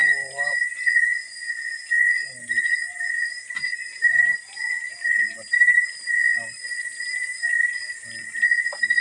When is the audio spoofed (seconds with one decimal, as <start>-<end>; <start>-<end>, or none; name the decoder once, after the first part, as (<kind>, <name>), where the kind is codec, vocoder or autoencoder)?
0.0-2.2 (vocoder, Vocos)